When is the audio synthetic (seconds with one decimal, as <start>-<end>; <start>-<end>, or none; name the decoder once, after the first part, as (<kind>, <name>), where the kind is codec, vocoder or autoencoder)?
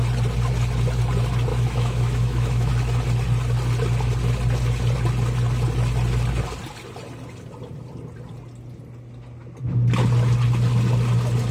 1.5-2.7 (autoencoder, DAC-VAE)